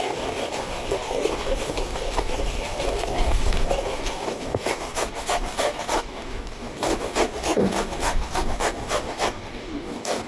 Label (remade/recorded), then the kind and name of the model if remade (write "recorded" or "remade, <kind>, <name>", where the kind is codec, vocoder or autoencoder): remade, codec, DAC